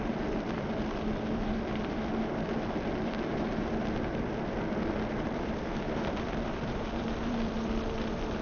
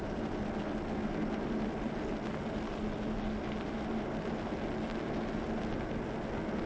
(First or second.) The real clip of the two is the second